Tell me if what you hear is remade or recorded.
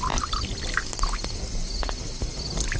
recorded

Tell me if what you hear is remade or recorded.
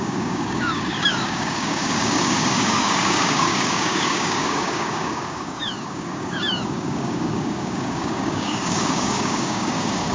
remade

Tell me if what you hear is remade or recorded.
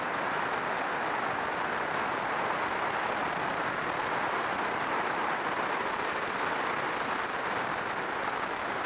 recorded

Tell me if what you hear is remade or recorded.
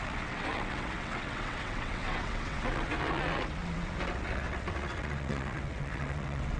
remade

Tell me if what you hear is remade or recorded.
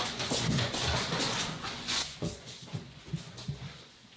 remade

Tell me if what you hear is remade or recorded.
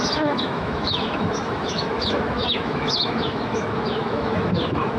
remade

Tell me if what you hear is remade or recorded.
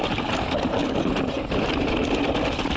recorded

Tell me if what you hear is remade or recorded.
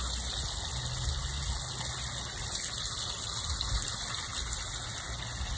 recorded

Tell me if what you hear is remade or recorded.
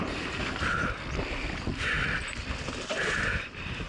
remade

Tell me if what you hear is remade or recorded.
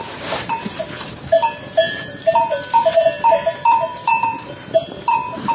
remade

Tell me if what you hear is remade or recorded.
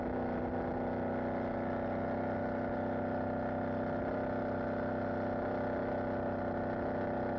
recorded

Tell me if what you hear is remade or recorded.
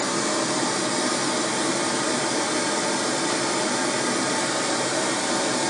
recorded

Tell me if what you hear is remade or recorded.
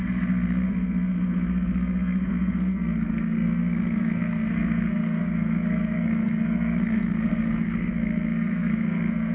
remade